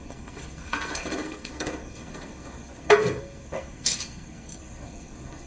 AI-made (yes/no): yes